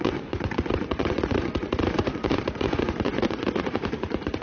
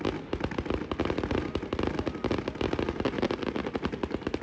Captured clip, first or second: second